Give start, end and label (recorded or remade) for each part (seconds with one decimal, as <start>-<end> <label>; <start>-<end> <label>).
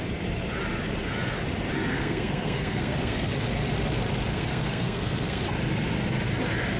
0.0-1.9 recorded; 1.9-3.3 remade; 3.3-4.3 recorded; 4.3-5.4 remade; 5.4-6.8 recorded